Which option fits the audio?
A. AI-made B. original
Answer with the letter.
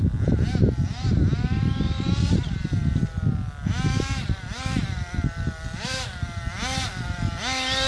B